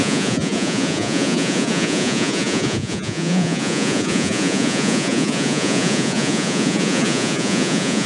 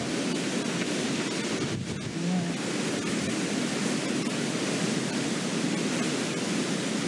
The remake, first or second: first